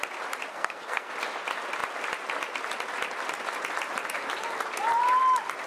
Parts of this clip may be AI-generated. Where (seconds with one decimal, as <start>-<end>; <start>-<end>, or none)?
0.5-1.1